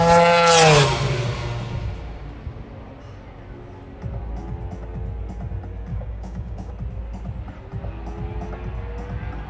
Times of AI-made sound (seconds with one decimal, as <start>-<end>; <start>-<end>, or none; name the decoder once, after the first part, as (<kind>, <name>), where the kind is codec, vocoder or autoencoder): 5.9-6.7 (codec, DAC)